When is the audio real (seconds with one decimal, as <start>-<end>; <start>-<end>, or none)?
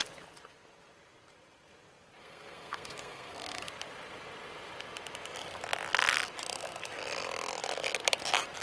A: 0.0-2.2; 3.7-8.6